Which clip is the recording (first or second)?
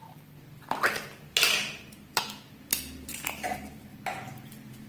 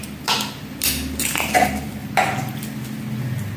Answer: second